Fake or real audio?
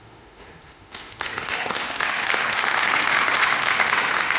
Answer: fake